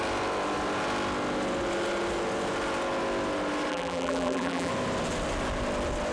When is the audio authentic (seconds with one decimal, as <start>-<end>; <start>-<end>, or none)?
0.0-3.7; 4.7-6.1